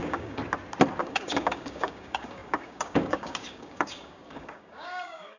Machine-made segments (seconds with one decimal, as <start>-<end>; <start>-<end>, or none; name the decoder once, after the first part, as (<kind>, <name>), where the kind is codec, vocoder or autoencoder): 0.0-0.4 (codec, DAC); 1.0-5.4